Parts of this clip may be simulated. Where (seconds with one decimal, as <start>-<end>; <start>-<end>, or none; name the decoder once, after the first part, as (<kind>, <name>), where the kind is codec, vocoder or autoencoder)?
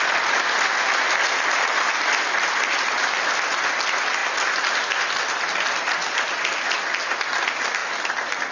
none